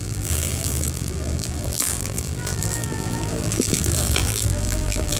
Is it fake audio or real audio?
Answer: fake